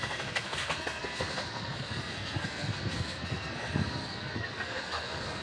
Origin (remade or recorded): remade